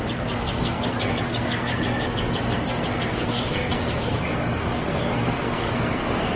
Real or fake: fake